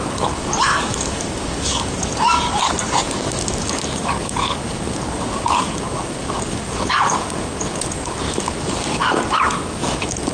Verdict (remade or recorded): remade